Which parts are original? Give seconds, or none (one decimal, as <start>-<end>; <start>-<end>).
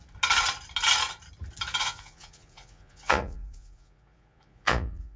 0.0-1.8